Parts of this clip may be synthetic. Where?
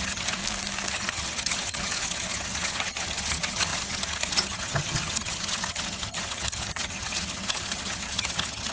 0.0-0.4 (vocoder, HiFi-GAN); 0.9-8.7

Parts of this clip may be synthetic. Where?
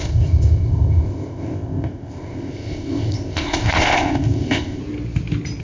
0.0-4.8 (codec, ZipCodec)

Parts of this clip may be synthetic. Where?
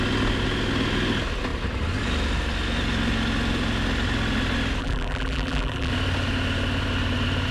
4.8-5.9 (vocoder, BigVGAN v2)